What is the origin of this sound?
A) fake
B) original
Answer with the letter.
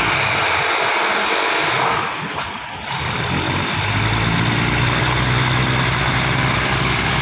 B